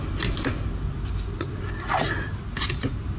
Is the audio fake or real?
real